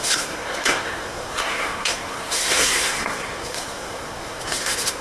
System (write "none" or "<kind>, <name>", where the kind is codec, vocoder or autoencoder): codec, SNAC